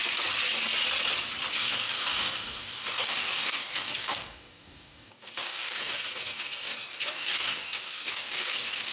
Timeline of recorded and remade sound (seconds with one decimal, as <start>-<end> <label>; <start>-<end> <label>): 0.0-1.5 recorded; 1.5-8.9 remade